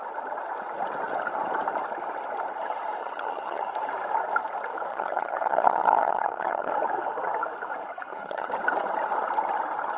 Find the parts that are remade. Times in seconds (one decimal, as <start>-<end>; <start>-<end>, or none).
3.0-3.7; 4.9-6.7; 7.9-8.5